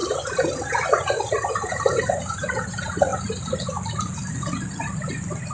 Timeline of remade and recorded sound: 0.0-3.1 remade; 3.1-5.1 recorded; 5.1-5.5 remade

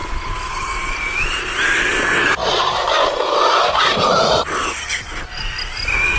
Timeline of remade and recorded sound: 0.0-1.4 remade; 1.4-2.4 recorded; 2.4-4.7 remade; 4.7-6.2 recorded

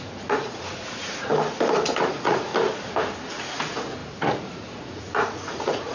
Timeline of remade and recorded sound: 0.0-1.3 remade; 1.3-2.1 recorded; 2.1-2.5 remade; 2.5-3.3 recorded; 3.3-5.9 remade